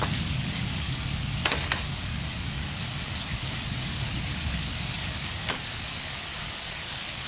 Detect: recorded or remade remade